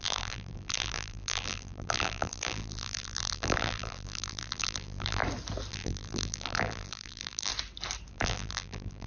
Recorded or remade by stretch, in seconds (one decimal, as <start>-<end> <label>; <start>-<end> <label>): 0.0-5.2 remade; 5.2-5.7 recorded; 5.7-7.5 remade; 7.5-8.1 recorded; 8.1-9.1 remade